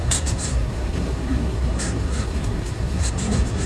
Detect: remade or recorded remade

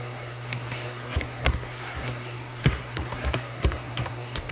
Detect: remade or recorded remade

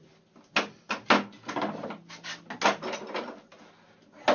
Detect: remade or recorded recorded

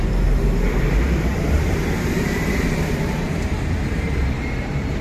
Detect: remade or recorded remade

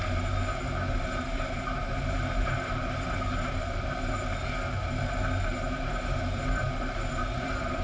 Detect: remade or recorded remade